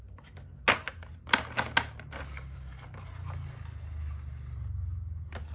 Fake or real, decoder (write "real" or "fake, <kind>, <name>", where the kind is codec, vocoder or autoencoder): real